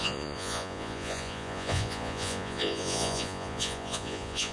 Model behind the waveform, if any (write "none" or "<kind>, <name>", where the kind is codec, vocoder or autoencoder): vocoder, Vocos